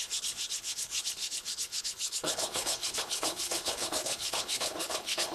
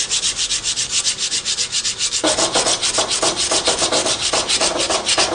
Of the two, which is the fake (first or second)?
first